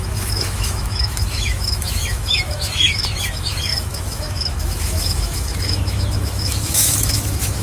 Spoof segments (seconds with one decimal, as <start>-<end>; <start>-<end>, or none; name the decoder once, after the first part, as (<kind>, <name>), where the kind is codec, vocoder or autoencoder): 0.0-7.6 (autoencoder, DAC-VAE)